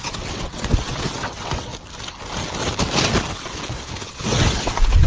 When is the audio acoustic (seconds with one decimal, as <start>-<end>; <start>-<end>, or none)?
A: 1.7-3.7